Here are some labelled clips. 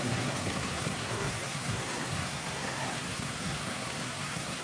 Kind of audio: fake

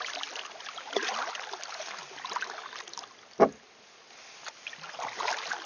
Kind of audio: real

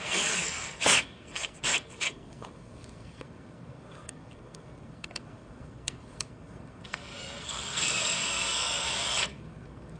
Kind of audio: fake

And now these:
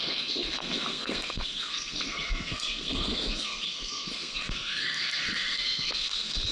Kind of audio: fake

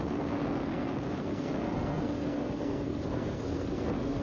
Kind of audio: fake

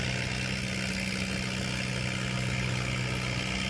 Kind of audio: real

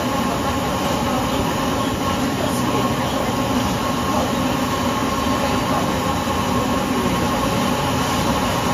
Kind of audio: real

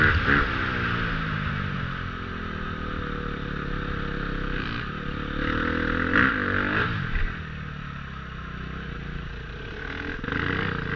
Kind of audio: real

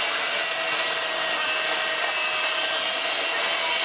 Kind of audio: real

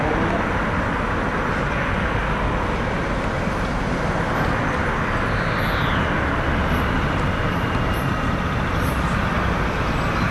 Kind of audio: real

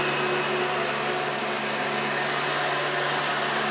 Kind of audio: real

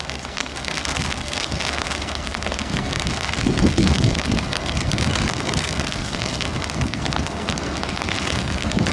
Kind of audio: fake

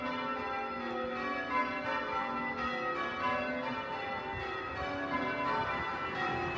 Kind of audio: real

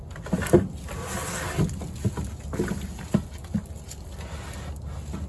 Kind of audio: real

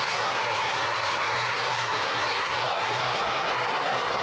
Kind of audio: fake